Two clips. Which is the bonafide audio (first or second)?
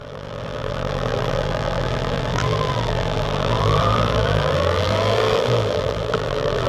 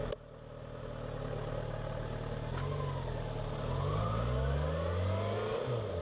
second